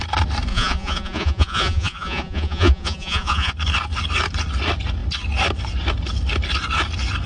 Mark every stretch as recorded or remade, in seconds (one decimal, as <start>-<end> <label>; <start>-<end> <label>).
0.0-0.5 recorded; 0.5-3.5 remade; 3.5-7.3 recorded